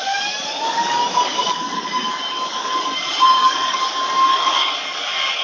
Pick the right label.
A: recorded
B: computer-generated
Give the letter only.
B